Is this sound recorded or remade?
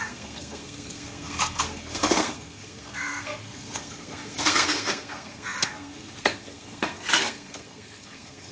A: remade